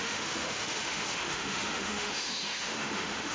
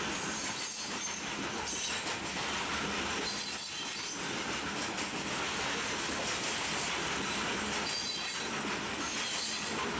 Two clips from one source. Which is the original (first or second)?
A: second